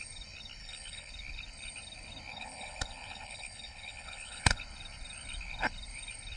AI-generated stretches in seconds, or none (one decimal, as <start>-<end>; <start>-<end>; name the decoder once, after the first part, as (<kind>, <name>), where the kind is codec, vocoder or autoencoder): 0.6-1.1 (codec, HILCodec); 2.3-4.6